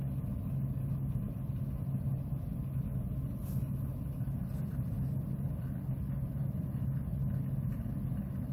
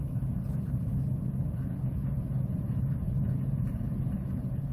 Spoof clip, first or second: second